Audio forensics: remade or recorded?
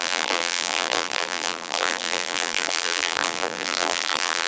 remade